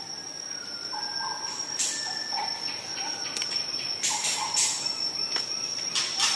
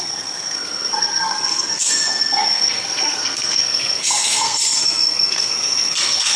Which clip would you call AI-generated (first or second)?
second